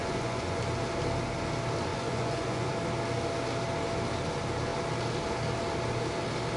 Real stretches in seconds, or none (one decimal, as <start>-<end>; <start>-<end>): 0.6-1.9; 2.7-6.6